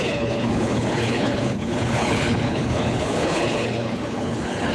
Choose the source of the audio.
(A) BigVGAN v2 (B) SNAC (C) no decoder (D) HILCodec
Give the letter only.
D